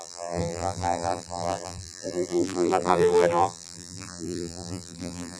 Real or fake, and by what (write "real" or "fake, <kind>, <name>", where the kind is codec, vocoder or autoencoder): fake, vocoder, BigVGAN v2